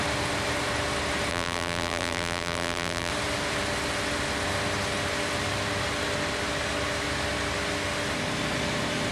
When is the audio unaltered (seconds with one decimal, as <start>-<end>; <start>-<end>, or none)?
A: 0.0-1.3; 3.1-9.1